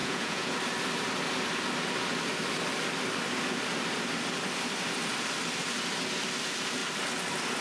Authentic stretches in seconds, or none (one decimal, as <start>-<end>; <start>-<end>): 0.5-7.6